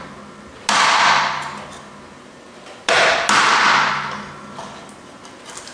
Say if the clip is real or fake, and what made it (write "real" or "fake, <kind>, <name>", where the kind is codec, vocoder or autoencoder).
real